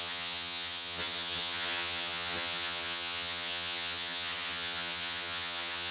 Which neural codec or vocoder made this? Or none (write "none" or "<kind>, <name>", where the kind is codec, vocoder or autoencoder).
vocoder, HiFi-GAN